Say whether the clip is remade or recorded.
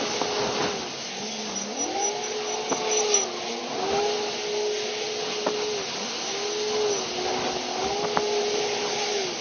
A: recorded